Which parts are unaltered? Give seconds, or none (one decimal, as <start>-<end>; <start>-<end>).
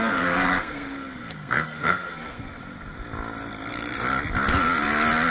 2.6-5.3